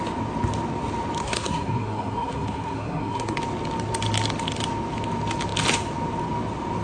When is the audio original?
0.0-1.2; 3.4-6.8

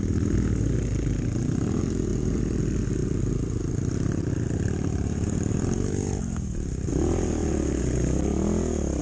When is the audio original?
0.0-2.1; 2.6-3.0; 4.9-9.0

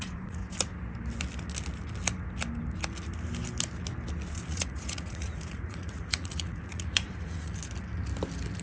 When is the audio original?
0.4-4.5; 7.6-8.6

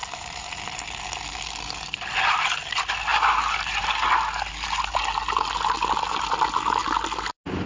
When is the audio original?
0.5-7.7

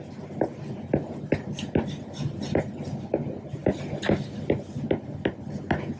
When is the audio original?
0.0-6.0